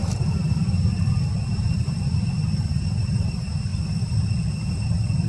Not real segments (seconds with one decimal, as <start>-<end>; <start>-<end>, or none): 0.0-3.7; 4.7-5.3